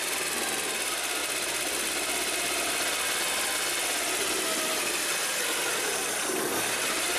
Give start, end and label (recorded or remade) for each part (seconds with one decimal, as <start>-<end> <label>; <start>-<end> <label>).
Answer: 0.0-7.2 recorded